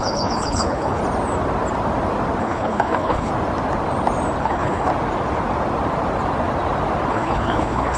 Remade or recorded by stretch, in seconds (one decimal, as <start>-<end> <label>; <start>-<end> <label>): 0.0-1.0 remade; 1.0-2.4 recorded; 2.4-3.3 remade; 3.3-4.4 recorded; 4.4-4.9 remade; 4.9-7.1 recorded; 7.1-8.0 remade